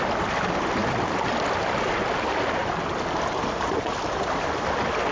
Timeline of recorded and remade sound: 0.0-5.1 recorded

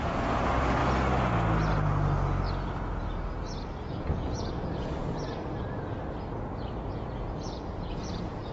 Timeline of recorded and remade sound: 0.0-0.8 remade; 0.8-3.9 recorded; 3.9-5.0 remade; 5.0-6.9 recorded; 6.9-8.5 remade